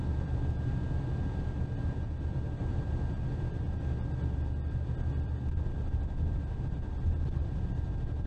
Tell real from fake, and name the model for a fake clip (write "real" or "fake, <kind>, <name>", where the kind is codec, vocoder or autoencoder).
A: real